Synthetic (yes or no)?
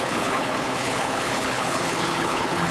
yes